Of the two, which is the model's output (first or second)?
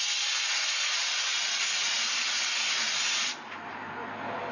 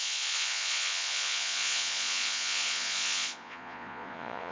second